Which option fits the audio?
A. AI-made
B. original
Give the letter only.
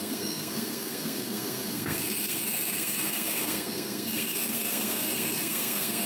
A